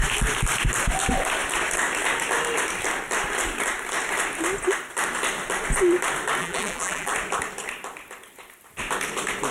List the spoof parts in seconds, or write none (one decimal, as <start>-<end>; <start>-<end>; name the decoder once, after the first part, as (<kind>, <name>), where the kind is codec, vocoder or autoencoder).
6.4-7.1 (vocoder, BigVGAN v2)